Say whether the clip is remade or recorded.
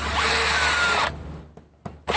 recorded